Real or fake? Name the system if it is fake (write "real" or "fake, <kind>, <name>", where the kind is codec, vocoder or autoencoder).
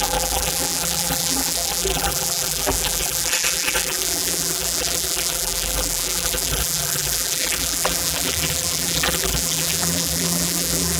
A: fake, vocoder, BigVGAN v2